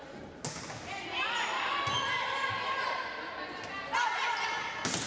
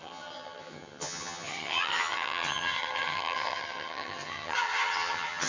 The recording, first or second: first